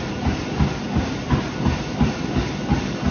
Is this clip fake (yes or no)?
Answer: no